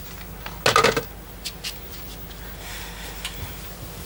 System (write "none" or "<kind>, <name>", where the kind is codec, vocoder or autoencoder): none